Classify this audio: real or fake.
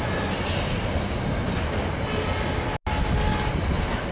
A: real